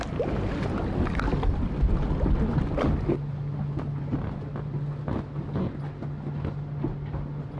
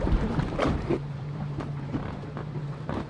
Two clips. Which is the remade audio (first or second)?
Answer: second